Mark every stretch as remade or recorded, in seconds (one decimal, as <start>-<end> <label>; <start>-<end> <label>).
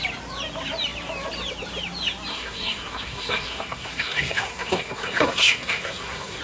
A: 0.0-2.3 recorded; 2.3-6.4 remade